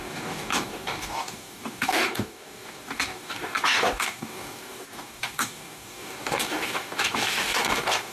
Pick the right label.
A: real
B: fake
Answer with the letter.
B